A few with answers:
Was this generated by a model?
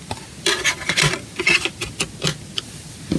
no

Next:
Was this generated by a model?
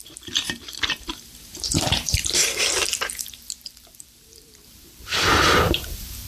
yes